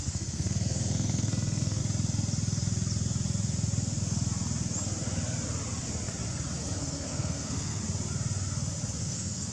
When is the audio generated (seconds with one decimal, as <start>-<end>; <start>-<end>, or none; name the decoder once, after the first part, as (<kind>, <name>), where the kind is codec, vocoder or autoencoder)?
0.0-1.8 (codec, SNAC); 6.8-7.8; 9.0-9.5